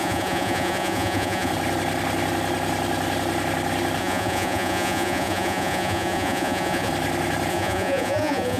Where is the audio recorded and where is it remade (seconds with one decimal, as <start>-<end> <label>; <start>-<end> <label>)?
0.0-1.5 remade; 1.5-4.0 recorded; 4.0-6.9 remade; 6.9-7.5 recorded; 7.5-8.6 remade